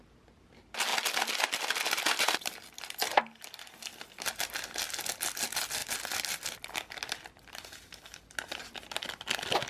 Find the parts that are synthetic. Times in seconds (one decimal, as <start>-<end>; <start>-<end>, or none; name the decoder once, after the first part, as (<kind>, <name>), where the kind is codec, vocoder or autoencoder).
none